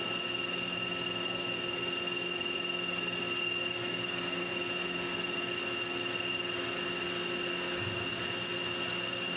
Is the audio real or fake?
real